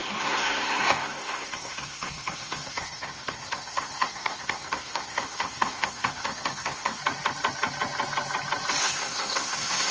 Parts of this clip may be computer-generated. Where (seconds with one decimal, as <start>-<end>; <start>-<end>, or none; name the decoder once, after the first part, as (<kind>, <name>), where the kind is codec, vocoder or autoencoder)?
0.0-7.0 (codec, SNAC); 8.8-9.9